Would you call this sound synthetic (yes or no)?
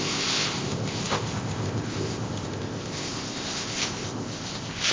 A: yes